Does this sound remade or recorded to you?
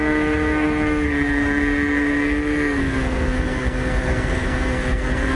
remade